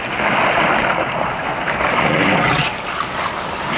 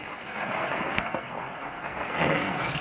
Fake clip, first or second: second